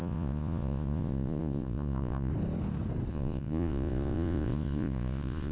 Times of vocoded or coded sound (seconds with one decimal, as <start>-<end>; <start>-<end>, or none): 0.0-2.3; 3.1-5.5